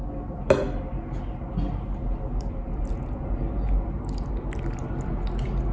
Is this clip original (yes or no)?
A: yes